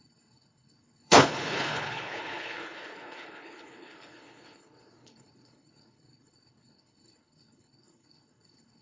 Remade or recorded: remade